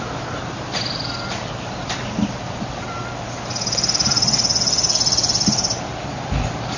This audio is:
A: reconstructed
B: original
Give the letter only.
A